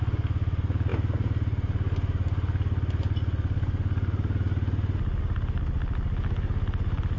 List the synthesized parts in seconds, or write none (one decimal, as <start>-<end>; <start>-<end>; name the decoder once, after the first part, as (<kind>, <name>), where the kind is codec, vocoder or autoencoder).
none